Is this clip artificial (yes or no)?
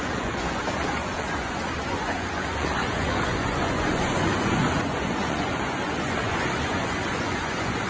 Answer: yes